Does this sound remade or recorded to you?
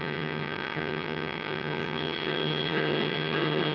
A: remade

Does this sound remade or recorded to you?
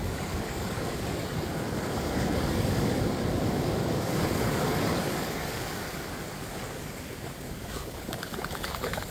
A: remade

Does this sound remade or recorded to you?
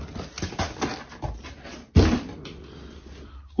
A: recorded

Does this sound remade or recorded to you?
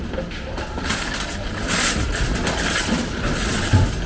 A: recorded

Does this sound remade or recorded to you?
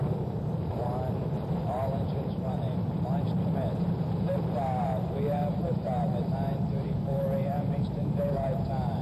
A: remade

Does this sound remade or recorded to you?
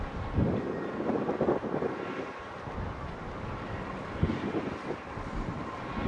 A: recorded